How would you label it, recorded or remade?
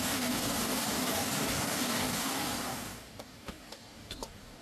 remade